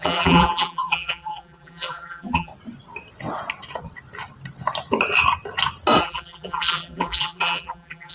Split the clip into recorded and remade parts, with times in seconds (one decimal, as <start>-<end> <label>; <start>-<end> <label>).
0.0-2.5 remade; 2.5-6.0 recorded; 6.0-8.1 remade